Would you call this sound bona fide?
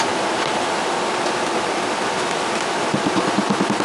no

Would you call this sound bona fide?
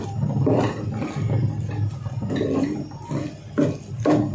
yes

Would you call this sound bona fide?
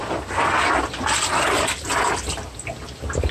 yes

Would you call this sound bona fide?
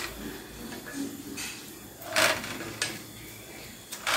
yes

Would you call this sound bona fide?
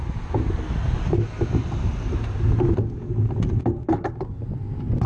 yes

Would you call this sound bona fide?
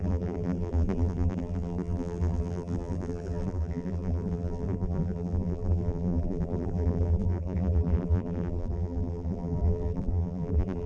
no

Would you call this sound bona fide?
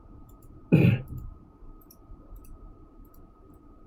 no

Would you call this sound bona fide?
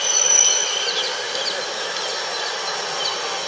yes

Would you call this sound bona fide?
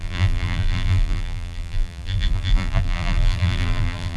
no